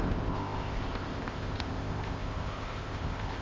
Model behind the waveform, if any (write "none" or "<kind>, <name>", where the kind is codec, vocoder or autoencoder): codec, ZipCodec